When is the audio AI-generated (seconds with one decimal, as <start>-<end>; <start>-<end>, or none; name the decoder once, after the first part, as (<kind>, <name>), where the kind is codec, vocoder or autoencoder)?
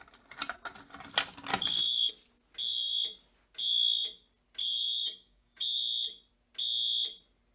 1.5-2.1 (codec, DAC); 4.6-5.8